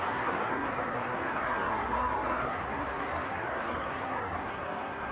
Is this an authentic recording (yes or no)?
no